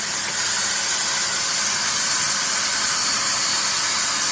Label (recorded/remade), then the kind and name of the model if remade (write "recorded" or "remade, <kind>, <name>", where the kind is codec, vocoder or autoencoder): recorded